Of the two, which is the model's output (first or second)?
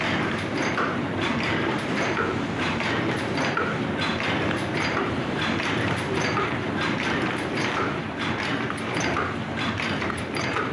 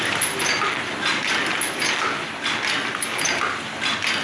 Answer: first